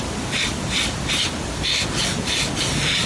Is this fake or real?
real